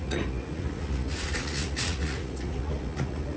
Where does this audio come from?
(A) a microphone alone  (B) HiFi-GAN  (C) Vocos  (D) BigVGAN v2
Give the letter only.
C